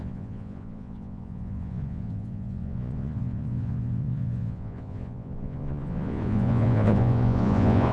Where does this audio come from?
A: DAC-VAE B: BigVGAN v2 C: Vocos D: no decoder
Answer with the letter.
C